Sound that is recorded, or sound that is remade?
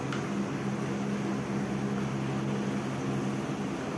recorded